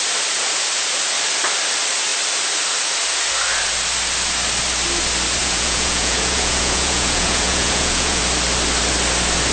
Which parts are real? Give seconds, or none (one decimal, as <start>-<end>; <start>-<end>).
0.0-5.4; 8.2-9.5